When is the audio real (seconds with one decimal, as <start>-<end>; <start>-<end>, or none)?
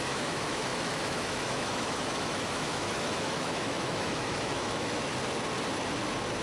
5.1-6.4